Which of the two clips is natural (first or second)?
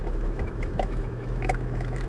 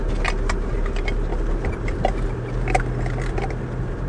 second